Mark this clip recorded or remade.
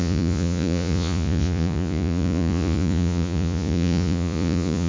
remade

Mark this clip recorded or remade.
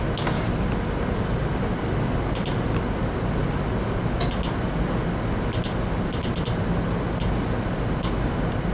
recorded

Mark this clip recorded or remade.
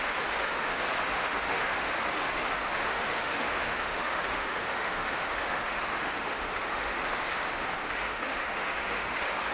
remade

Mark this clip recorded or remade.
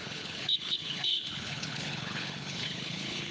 remade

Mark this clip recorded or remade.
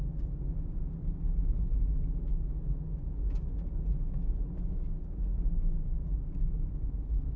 recorded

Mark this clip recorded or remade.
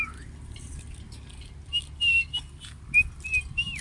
recorded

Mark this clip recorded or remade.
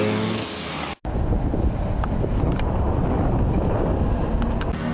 recorded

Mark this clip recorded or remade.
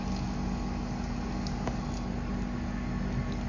recorded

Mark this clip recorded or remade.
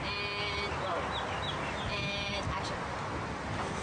recorded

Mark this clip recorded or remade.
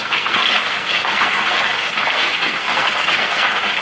remade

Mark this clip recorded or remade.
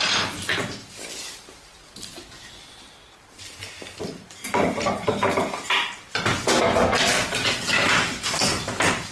recorded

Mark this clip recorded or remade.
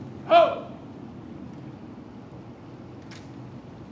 recorded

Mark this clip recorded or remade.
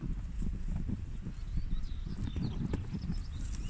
recorded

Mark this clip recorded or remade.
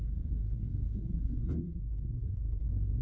remade